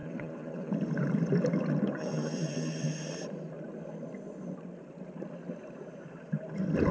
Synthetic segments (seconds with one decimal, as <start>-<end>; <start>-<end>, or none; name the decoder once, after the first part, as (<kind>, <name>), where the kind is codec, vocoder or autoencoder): 0.0-0.7 (vocoder, WaveNeXt); 2.0-2.9